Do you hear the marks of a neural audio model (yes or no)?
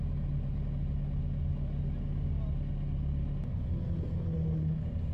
no